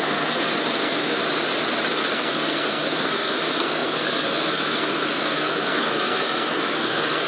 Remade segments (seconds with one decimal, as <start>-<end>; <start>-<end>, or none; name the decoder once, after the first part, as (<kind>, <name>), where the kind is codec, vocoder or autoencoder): 0.0-1.2 (codec, SNAC); 1.9-7.3